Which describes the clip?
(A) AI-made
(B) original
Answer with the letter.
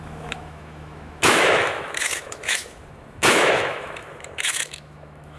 A